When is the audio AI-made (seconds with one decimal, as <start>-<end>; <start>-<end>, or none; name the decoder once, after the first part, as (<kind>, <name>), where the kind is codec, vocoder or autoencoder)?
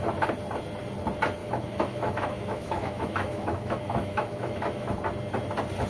1.4-4.9 (autoencoder, DAC-VAE)